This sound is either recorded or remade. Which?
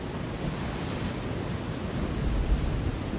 recorded